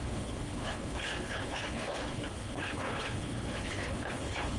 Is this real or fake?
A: fake